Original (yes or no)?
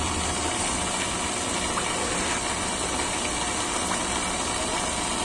yes